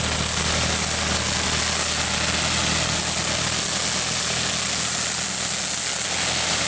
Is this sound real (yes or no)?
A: yes